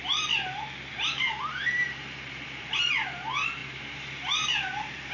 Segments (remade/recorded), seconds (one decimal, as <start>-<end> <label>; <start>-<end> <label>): 0.0-0.9 recorded; 0.9-2.9 remade; 2.9-3.6 recorded; 3.6-5.1 remade